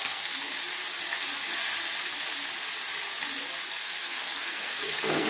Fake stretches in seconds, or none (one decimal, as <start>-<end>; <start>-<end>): 0.0-0.5; 3.7-5.3